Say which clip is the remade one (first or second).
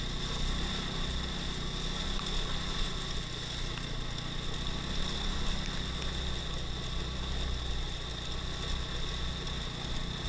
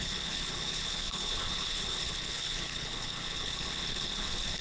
second